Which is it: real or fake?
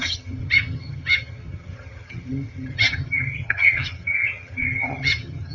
fake